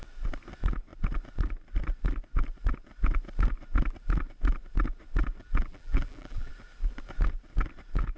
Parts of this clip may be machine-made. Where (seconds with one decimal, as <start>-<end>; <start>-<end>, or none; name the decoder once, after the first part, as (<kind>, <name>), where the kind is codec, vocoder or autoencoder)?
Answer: 5.4-6.5 (vocoder, BigVGAN v2)

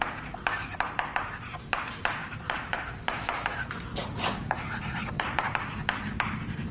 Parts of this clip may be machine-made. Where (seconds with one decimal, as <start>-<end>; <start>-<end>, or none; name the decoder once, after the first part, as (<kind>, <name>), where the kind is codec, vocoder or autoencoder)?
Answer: 2.2-3.6 (vocoder, BigVGAN v2); 4.0-5.3

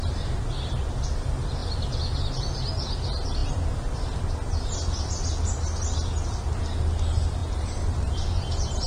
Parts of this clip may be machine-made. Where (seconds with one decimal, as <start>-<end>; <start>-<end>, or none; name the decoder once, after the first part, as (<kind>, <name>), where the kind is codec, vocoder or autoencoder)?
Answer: 7.4-8.1 (vocoder, BigVGAN v2)

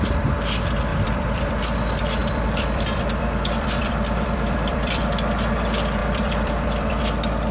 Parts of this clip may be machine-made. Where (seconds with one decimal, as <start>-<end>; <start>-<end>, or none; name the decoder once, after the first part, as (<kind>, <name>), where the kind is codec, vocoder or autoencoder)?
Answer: 0.9-1.6 (vocoder, BigVGAN v2); 2.2-5.1; 6.0-7.0

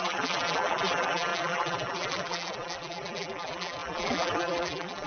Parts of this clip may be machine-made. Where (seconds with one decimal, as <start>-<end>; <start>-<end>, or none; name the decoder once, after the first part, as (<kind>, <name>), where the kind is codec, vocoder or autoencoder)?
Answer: 0.0-5.1 (vocoder, BigVGAN v2)